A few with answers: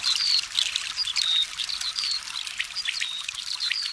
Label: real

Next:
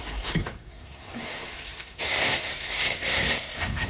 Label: fake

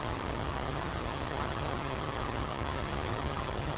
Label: fake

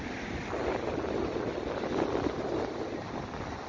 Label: real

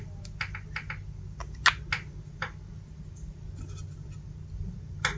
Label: real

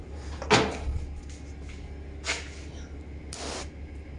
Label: real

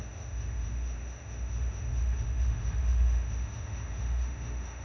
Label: fake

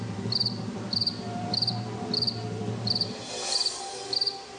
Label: fake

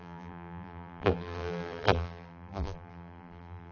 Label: fake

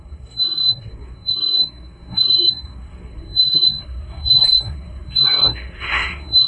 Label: fake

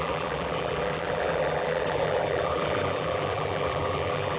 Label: fake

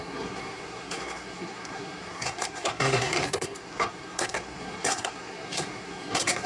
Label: fake